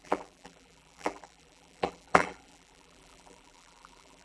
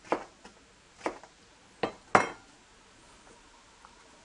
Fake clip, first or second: first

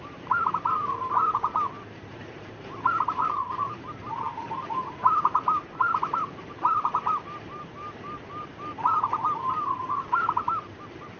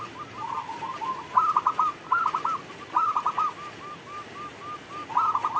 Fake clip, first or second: first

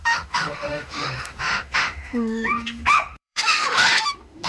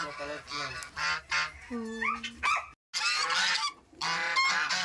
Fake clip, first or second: first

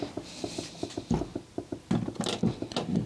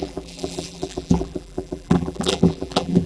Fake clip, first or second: second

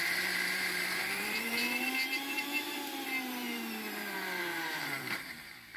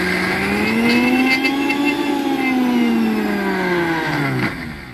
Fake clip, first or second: first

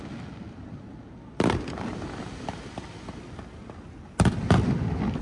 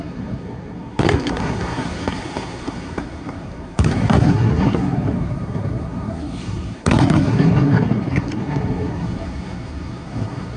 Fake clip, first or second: second